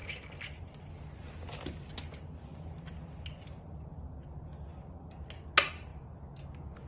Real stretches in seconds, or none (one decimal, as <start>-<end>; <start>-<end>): 0.0-6.9

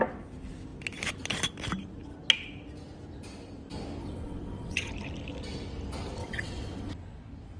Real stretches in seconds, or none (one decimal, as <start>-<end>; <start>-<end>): 0.0-4.0; 4.9-6.2; 6.9-7.6

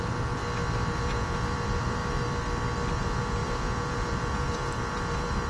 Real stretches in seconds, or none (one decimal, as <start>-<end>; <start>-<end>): 0.4-0.9; 2.0-2.9

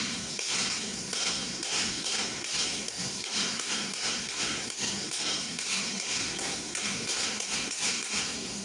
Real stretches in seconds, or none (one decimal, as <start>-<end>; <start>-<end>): none